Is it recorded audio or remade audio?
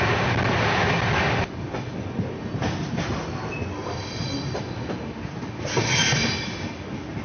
recorded